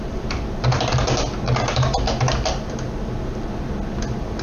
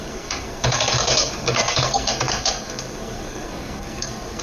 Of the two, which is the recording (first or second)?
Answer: first